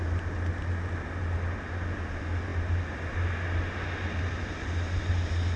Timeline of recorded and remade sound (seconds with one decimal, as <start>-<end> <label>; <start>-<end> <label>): 0.0-5.6 recorded